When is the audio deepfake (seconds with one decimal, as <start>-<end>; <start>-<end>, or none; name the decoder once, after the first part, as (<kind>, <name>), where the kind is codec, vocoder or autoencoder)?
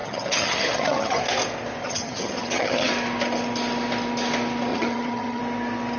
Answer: 0.0-1.2 (vocoder, HiFi-GAN); 1.8-2.9; 4.7-5.4